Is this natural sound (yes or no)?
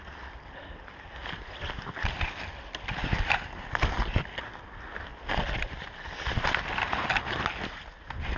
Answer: yes